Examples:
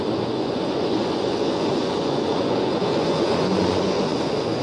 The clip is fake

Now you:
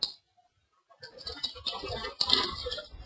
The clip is real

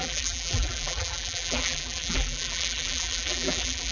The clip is fake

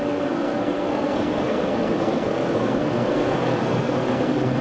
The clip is fake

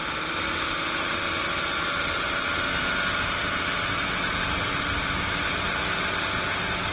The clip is real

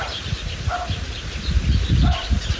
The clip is real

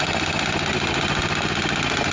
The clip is real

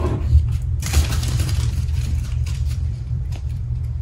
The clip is fake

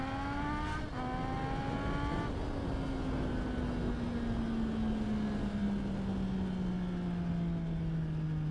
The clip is real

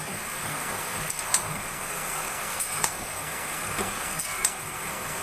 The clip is fake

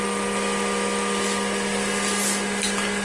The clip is real